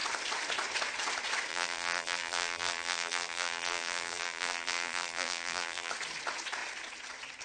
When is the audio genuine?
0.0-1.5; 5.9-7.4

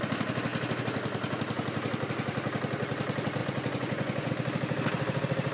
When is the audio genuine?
0.0-3.4; 4.3-5.5

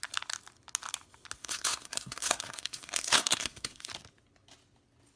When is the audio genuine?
0.0-1.4; 3.9-5.2

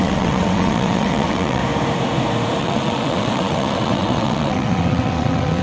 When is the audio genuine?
1.6-2.6

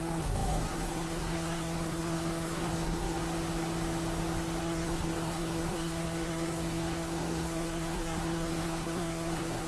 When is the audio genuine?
3.2-4.6